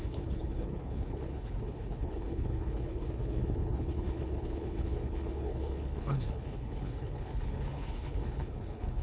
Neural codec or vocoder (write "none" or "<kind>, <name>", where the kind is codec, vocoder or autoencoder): codec, HILCodec